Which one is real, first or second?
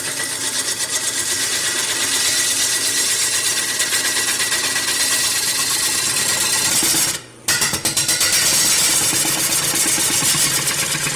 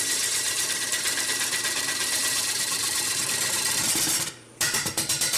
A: first